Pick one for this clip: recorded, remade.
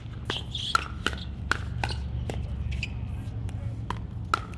recorded